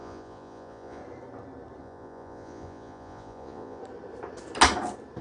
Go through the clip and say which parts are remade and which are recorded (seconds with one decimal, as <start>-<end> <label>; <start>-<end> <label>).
0.0-1.0 remade; 1.0-1.8 recorded; 1.8-3.8 remade; 3.8-5.2 recorded